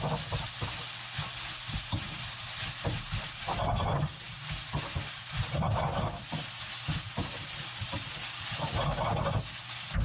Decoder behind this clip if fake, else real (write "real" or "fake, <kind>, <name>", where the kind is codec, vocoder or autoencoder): real